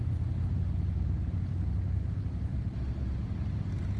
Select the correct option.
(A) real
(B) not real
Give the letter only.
A